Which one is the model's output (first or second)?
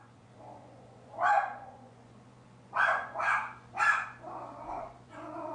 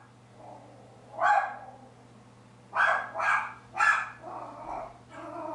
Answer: first